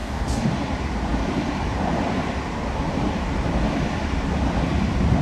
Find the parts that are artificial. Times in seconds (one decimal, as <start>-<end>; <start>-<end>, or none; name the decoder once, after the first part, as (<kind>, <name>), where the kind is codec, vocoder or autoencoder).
0.0-0.5 (codec, DAC)